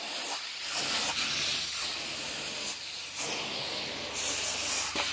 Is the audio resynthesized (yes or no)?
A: no